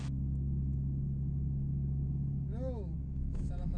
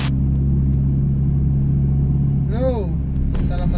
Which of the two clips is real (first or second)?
second